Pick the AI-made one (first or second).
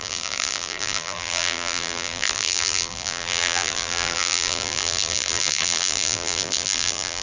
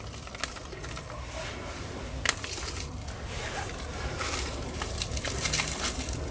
first